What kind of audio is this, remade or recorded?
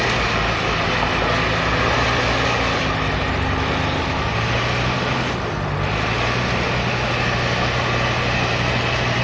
recorded